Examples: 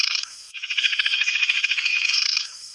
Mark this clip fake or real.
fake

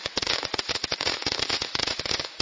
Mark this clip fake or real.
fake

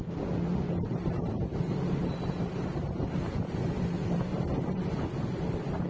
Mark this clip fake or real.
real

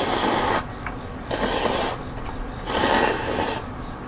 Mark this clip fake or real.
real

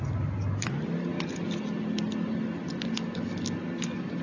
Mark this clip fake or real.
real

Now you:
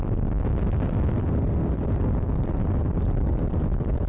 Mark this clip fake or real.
fake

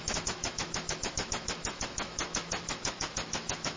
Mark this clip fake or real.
fake